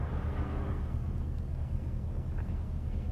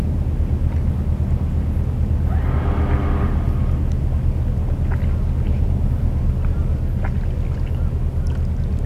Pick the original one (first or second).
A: second